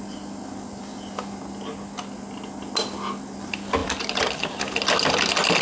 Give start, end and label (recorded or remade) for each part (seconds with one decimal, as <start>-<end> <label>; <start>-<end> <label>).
0.0-3.8 recorded; 3.8-4.6 remade; 4.6-5.6 recorded